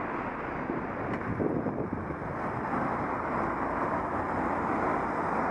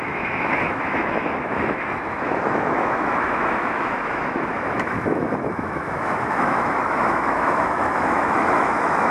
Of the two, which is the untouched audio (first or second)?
first